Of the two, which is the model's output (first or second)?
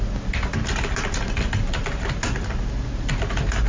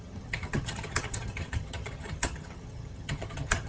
second